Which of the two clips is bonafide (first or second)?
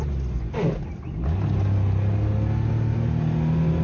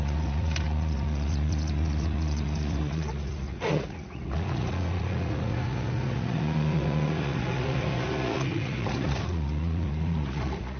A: first